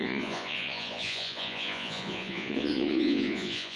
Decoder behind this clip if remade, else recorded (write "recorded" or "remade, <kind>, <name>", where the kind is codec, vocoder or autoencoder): remade, vocoder, Vocos